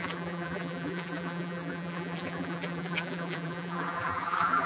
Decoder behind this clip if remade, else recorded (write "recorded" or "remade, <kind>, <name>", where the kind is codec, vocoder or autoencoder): remade, vocoder, BigVGAN v2